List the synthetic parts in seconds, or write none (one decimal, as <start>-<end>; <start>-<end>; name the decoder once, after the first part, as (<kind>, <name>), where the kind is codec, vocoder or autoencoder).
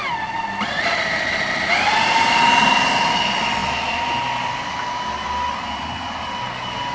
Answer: none